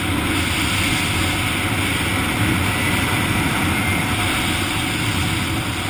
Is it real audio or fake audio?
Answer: real